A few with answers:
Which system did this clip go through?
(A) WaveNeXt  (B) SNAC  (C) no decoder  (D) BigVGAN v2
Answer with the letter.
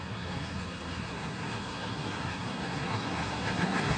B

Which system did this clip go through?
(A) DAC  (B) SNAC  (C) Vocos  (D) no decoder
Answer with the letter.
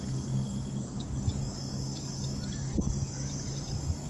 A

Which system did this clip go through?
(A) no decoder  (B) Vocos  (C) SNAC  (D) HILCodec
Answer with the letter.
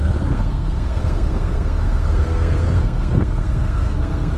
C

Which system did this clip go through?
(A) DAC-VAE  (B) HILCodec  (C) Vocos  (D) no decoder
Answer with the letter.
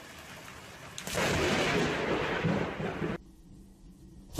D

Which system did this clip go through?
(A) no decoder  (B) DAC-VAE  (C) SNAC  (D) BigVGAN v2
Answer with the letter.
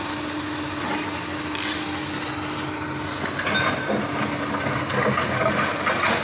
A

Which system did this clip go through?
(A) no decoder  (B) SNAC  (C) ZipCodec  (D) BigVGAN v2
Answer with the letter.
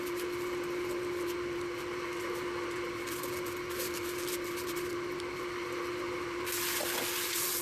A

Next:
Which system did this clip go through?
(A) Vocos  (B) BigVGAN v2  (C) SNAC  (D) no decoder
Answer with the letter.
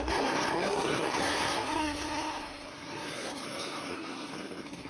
C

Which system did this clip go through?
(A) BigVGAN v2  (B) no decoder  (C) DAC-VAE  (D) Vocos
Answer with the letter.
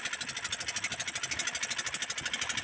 B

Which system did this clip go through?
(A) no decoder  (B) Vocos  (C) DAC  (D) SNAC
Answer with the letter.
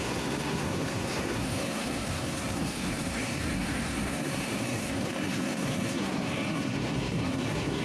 D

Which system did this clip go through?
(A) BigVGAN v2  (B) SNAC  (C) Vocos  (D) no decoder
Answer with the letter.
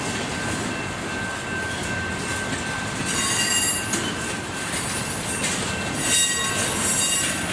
D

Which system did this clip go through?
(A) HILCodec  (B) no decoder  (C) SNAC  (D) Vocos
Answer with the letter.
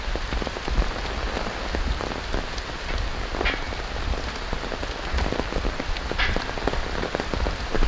B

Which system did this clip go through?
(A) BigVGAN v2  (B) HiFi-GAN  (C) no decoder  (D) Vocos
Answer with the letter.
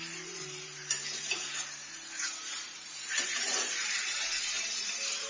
A